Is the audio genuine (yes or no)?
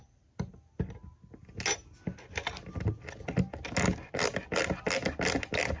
yes